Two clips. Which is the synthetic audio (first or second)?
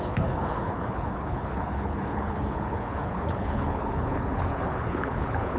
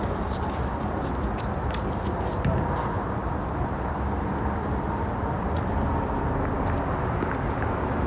first